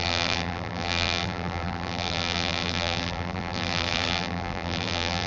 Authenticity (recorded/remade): remade